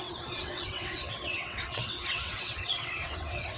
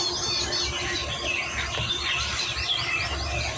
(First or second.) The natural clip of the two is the second